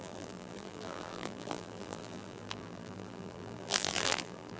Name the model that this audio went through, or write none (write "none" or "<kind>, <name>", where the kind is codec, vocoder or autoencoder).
vocoder, BigVGAN v2